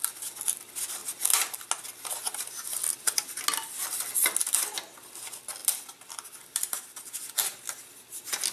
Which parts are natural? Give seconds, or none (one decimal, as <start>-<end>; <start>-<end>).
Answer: 0.0-8.5